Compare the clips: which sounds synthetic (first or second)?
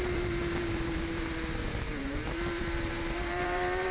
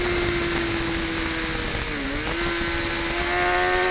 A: first